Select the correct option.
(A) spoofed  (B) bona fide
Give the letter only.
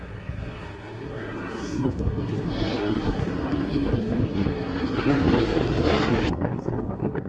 A